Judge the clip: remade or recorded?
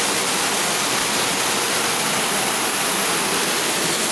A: recorded